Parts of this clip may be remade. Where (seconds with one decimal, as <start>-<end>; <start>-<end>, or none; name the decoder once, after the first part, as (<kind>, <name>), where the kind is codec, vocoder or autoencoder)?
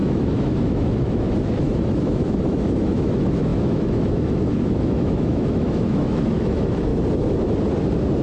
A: 0.0-6.9 (autoencoder, DAC-VAE)